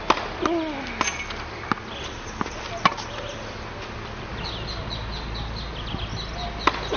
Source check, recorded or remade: recorded